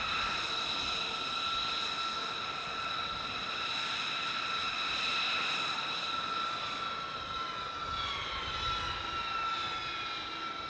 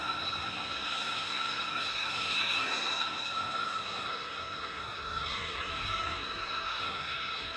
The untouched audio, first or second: first